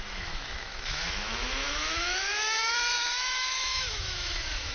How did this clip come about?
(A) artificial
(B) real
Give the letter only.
A